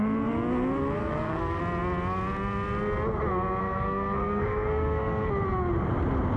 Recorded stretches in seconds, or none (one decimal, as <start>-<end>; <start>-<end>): 0.0-1.0; 1.6-3.6; 5.3-6.4